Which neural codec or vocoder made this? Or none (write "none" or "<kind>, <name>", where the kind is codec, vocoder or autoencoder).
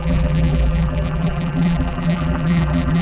vocoder, BigVGAN v2